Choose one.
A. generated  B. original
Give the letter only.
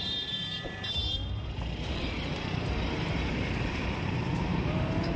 A